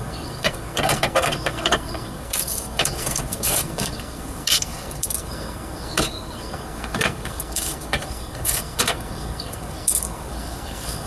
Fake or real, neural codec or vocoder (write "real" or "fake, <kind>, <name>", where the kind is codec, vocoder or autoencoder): fake, codec, SNAC